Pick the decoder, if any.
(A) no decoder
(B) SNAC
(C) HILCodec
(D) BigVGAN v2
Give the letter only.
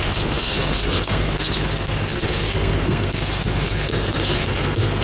B